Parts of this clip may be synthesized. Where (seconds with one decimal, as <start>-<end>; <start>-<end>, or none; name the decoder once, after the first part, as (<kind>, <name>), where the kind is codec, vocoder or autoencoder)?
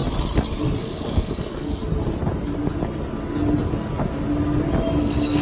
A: 0.8-1.8 (codec, SNAC); 5.0-5.4